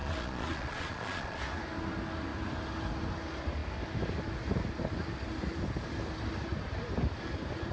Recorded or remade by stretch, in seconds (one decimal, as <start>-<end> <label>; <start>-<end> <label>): 0.0-1.4 remade; 1.4-7.7 recorded